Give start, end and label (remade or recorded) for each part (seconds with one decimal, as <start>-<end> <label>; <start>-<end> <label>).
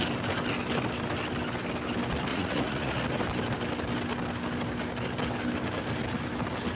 0.0-2.3 recorded; 2.3-3.0 remade; 3.0-6.8 recorded